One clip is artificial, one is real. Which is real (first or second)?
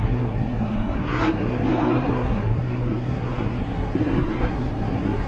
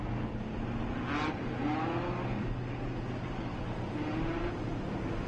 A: second